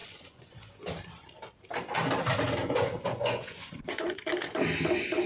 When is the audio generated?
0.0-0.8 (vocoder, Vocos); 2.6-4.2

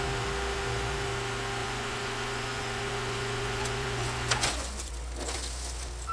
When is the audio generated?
1.6-4.9 (vocoder, Vocos)

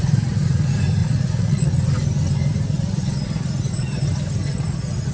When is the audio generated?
1.0-1.7 (vocoder, Vocos)